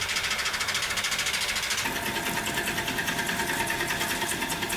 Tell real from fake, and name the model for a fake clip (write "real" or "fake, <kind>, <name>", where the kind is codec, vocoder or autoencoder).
real